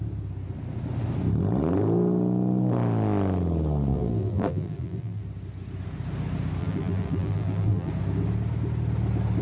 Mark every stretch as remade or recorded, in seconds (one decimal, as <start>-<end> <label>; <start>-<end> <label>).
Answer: 0.0-3.9 recorded; 3.9-5.2 remade; 5.2-6.6 recorded; 6.6-7.9 remade; 7.9-9.4 recorded